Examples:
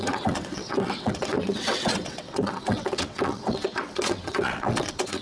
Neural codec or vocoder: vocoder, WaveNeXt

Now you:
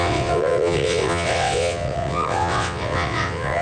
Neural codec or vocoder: vocoder, WaveNeXt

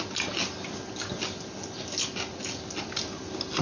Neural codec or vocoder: none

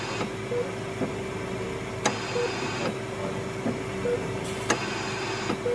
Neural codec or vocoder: none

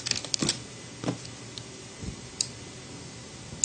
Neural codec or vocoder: none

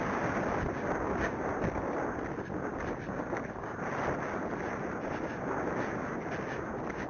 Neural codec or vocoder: none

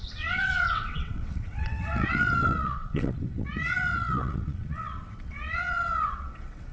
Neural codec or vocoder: vocoder, WaveNeXt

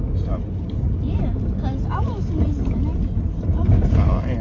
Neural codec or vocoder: none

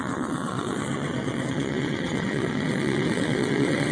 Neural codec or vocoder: vocoder, WaveNeXt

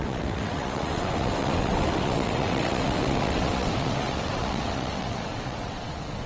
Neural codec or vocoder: vocoder, WaveNeXt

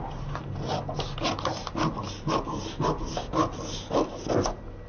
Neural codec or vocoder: none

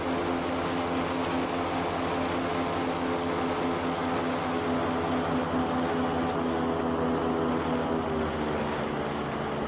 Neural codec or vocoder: none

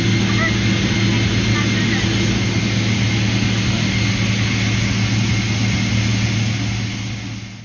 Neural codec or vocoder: none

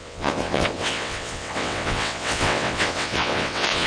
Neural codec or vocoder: vocoder, WaveNeXt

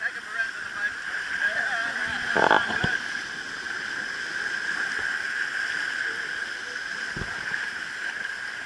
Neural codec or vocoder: none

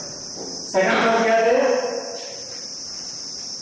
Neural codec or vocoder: none